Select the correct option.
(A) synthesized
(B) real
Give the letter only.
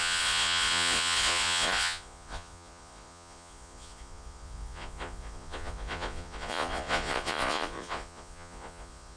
A